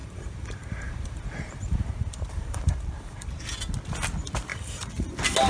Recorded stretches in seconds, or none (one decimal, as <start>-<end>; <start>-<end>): 3.3-4.5; 5.1-5.5

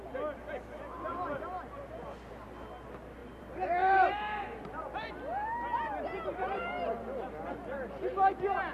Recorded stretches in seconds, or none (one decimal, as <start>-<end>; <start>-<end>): 0.0-3.2; 5.1-6.1; 6.6-8.7